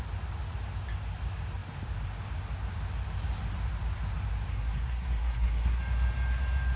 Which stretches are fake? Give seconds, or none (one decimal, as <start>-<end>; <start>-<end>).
4.5-5.8